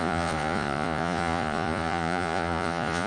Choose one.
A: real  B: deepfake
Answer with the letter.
B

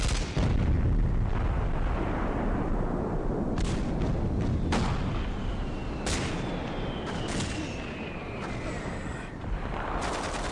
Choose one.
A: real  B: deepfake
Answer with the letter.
A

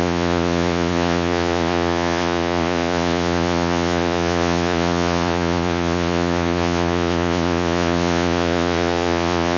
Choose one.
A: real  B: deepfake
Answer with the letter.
B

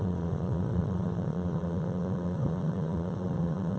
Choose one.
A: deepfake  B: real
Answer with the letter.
A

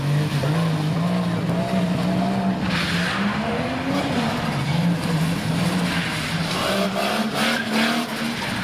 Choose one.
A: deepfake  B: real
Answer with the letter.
B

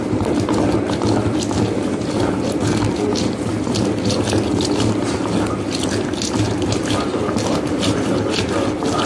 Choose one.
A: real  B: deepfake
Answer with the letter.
A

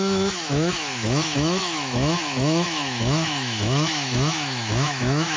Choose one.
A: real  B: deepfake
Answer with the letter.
B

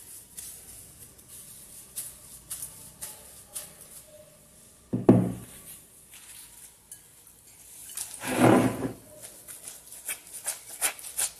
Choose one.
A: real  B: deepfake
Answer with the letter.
A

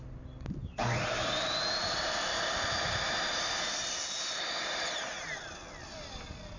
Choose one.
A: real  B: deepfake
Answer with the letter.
A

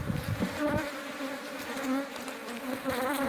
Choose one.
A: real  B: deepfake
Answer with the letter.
A